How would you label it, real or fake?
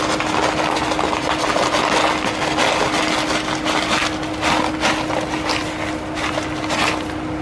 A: real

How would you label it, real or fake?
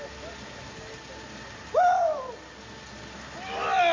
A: real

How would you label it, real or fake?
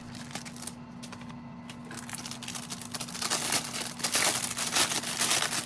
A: real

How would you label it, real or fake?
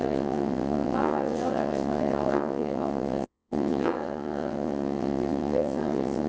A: fake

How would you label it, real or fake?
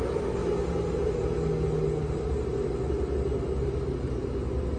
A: real